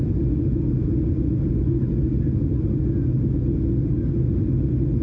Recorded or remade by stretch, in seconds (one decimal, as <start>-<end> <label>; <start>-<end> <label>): 0.0-5.0 recorded

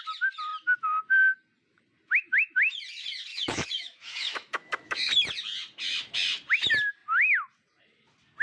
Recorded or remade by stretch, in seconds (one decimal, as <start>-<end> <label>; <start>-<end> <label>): 0.0-3.3 recorded; 3.3-5.1 remade; 5.1-8.4 recorded

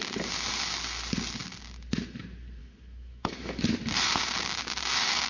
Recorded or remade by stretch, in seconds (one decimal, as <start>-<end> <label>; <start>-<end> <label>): 0.0-2.6 recorded; 2.6-3.6 remade; 3.6-5.3 recorded

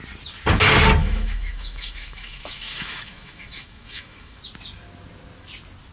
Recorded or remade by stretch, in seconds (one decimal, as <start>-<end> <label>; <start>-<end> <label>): 0.0-1.0 recorded; 1.0-4.4 remade; 4.4-5.9 recorded

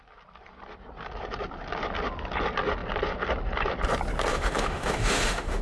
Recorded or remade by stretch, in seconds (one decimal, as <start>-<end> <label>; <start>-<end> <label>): 0.0-4.3 recorded; 4.3-5.6 remade

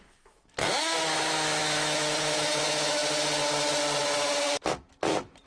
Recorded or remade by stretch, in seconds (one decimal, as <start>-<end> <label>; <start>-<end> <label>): 0.0-3.0 remade; 3.0-4.0 recorded; 4.0-5.5 remade